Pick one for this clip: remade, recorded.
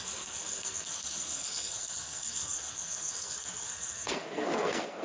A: remade